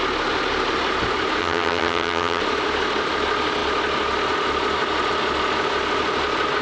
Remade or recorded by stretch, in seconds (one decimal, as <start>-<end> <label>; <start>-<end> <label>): 0.0-1.4 recorded; 1.4-2.4 remade; 2.4-6.6 recorded